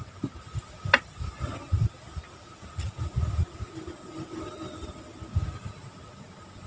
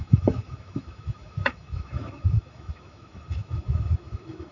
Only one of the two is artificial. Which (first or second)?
second